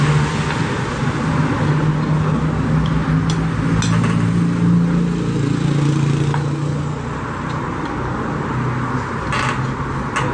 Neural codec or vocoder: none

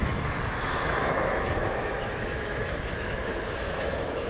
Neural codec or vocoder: autoencoder, DAC-VAE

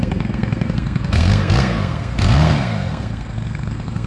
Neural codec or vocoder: codec, SNAC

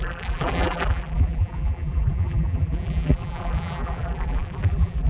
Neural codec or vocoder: vocoder, BigVGAN v2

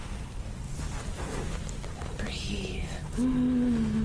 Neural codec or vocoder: none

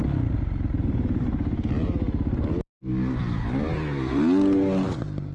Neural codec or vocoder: none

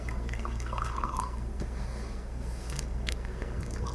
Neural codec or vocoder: codec, SNAC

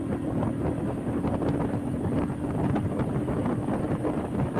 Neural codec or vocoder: none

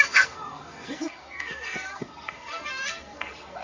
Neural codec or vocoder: codec, SNAC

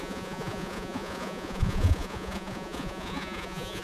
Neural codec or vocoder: vocoder, Vocos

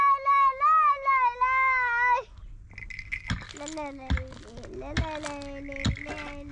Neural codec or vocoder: none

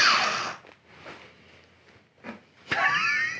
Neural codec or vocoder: none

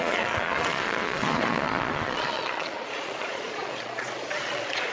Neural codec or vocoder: vocoder, Vocos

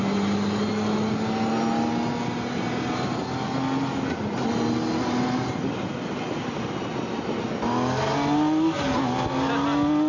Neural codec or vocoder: none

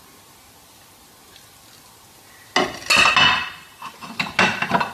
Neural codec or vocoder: none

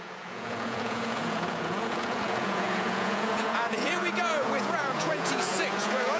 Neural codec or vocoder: vocoder, Vocos